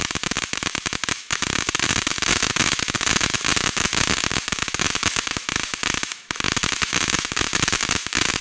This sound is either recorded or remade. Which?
remade